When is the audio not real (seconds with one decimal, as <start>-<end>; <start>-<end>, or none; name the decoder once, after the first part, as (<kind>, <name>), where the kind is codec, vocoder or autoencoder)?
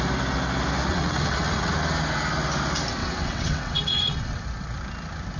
0.9-1.7 (vocoder, WaveNeXt); 3.0-4.4